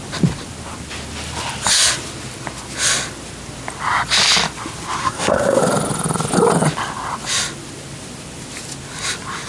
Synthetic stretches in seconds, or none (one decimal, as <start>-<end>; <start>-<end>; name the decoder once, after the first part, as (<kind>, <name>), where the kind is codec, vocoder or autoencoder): 5.0-5.6 (codec, SNAC)